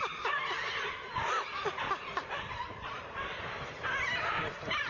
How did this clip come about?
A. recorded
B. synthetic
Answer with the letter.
A